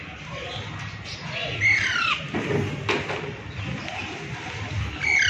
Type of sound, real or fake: real